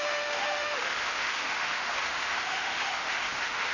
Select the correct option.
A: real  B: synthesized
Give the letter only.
B